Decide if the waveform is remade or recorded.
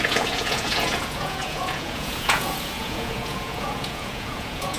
remade